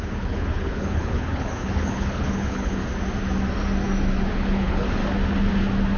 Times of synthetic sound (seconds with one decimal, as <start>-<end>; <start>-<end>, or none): 0.0-2.8; 4.3-5.0